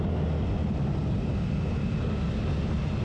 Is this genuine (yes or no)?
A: yes